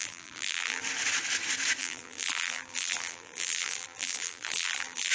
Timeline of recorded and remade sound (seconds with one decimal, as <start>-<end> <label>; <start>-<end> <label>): 0.0-0.8 remade; 0.8-1.8 recorded; 1.8-5.1 remade